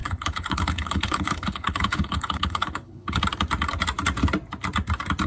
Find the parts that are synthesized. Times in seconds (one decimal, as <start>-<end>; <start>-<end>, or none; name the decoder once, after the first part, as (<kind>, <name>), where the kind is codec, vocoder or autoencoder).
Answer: 0.0-3.2 (codec, HILCodec)